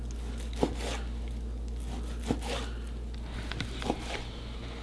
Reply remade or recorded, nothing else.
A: recorded